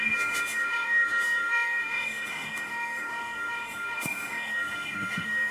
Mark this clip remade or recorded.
remade